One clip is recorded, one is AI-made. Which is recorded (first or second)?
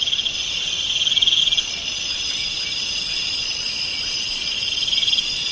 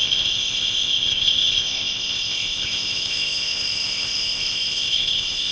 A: first